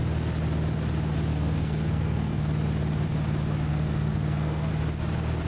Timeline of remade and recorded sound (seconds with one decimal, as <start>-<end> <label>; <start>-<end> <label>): 0.0-1.3 recorded; 1.3-2.4 remade; 2.4-3.7 recorded; 3.7-4.7 remade; 4.7-5.5 recorded